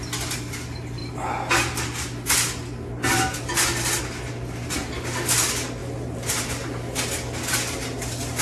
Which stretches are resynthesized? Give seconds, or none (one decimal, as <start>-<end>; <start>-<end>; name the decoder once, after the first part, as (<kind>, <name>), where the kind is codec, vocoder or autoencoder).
none